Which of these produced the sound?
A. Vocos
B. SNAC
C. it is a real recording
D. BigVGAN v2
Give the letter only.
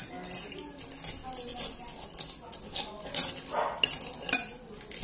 C